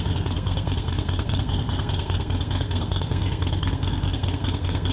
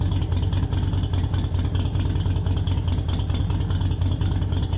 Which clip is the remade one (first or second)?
first